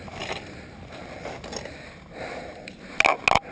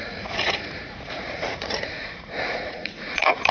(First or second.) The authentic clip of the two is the first